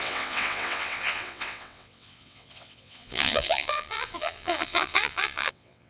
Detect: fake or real fake